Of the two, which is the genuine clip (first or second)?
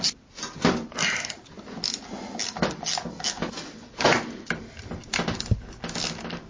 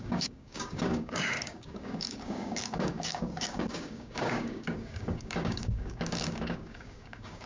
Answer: first